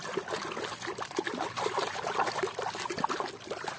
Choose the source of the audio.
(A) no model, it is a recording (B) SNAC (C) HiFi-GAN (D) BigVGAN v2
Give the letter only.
A